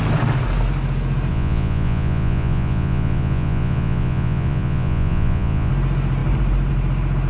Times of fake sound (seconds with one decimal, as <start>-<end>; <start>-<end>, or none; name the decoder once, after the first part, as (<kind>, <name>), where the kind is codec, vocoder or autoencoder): 1.3-5.7 (vocoder, Vocos)